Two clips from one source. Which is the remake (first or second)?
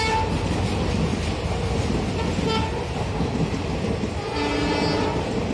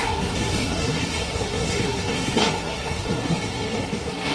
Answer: second